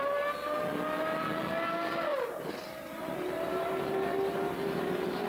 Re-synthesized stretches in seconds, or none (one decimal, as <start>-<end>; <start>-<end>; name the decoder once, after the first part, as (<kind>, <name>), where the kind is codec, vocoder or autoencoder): 2.1-5.3 (vocoder, BigVGAN v2)